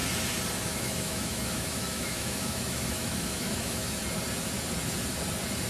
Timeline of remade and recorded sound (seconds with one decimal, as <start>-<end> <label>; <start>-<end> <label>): 0.0-0.6 recorded; 0.6-4.0 remade; 4.0-5.7 recorded

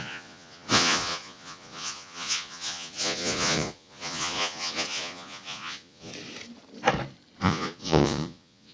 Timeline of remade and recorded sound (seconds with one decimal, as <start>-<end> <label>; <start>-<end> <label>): 0.0-6.1 remade; 6.1-7.4 recorded; 7.4-8.7 remade

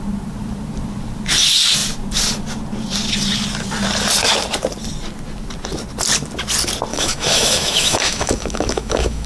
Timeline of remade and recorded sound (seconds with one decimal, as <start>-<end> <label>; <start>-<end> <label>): 0.0-6.9 recorded; 6.9-9.3 remade

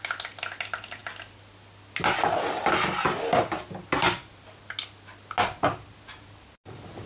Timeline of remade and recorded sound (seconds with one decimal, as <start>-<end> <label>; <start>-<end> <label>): 0.0-7.1 recorded

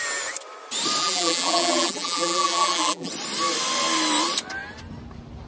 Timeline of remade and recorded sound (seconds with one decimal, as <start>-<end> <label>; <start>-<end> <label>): 0.0-1.0 recorded; 1.0-3.1 remade; 3.1-5.5 recorded